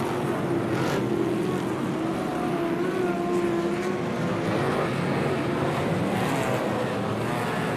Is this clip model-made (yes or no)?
no